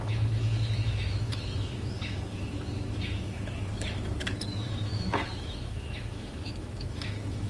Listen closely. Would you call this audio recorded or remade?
remade